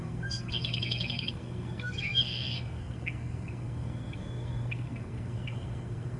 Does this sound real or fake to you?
fake